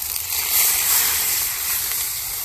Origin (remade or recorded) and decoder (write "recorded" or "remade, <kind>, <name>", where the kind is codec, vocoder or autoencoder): remade, vocoder, BigVGAN v2